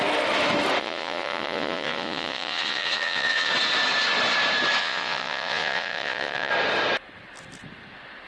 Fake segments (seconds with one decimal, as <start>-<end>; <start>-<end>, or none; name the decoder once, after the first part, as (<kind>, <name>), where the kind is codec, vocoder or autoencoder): 0.8-3.5 (vocoder, Vocos); 4.8-6.5